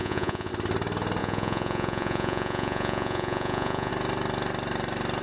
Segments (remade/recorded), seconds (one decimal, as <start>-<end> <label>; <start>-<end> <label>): 0.0-0.5 remade; 0.5-1.2 recorded; 1.2-3.9 remade; 3.9-5.2 recorded